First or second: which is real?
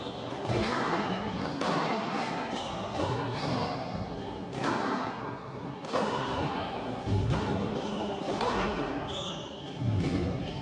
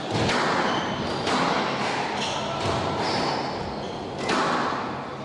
second